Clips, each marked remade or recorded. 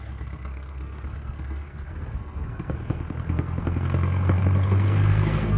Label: remade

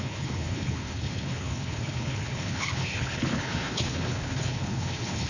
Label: remade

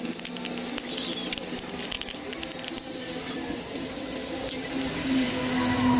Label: recorded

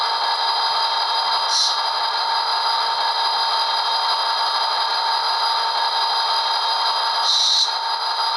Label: recorded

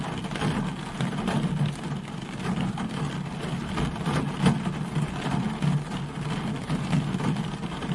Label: recorded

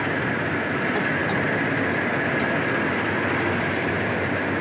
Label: recorded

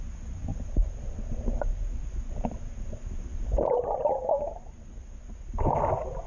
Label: recorded